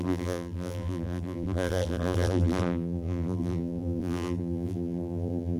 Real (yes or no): no